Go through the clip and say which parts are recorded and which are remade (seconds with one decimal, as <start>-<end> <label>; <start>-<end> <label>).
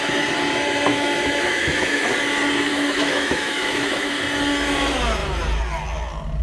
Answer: 0.0-0.9 recorded; 0.9-2.1 remade; 2.1-2.7 recorded; 2.7-4.2 remade; 4.2-6.4 recorded